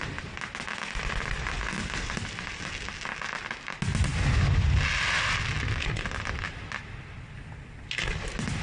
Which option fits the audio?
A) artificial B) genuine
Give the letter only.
B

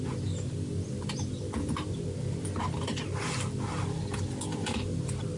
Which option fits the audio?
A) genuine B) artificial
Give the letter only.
A